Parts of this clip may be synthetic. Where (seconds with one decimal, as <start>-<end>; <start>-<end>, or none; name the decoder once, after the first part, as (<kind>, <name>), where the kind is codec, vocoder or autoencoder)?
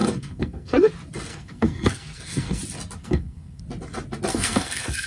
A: 0.0-0.9 (codec, SNAC); 1.3-2.6; 3.0-3.6; 4.3-5.1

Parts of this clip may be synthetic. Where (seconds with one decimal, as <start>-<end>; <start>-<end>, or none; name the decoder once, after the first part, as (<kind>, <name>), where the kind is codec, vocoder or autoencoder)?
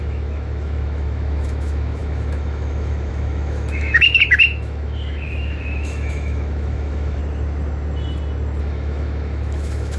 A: 0.0-7.2 (autoencoder, DAC-VAE); 8.6-10.0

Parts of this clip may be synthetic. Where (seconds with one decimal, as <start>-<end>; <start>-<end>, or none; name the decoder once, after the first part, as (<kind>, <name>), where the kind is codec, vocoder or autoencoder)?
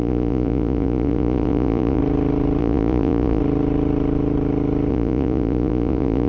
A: 0.0-2.0 (vocoder, Vocos); 2.6-3.4; 4.9-6.3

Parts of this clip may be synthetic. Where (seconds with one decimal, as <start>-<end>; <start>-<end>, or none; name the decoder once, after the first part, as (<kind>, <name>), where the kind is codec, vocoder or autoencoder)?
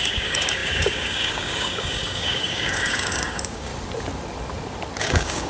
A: 0.0-3.7 (codec, DAC); 5.0-5.5